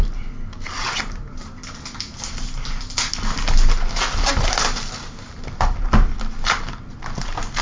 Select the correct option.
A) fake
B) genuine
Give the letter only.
B